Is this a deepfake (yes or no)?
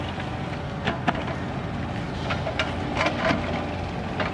no